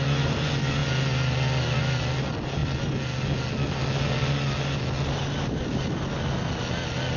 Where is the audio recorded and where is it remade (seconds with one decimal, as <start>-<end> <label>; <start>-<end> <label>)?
0.0-7.2 recorded